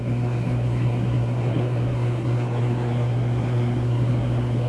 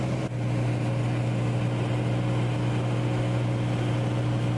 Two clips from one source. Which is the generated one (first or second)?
first